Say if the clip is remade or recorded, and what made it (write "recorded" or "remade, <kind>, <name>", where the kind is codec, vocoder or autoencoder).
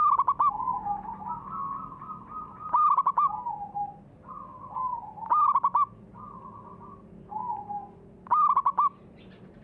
recorded